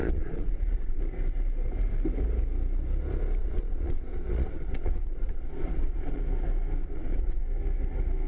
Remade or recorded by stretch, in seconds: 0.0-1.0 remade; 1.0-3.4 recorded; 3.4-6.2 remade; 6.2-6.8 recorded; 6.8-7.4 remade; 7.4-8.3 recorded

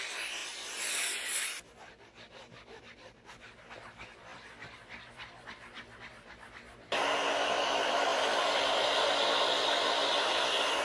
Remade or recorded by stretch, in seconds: 0.0-8.1 recorded; 8.1-9.1 remade; 9.1-10.8 recorded